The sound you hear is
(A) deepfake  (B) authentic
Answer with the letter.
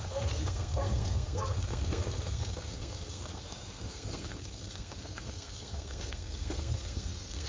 A